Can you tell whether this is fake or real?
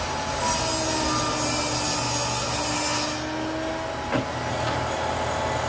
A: real